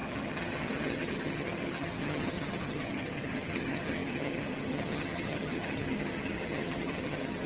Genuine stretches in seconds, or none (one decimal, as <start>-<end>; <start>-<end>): none